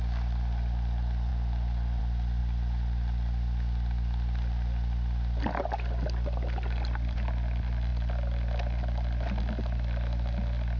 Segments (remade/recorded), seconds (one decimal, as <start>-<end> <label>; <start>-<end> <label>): 0.0-1.3 recorded; 1.3-2.0 remade; 2.0-10.8 recorded